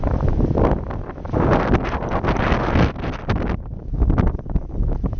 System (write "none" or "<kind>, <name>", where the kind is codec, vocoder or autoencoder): none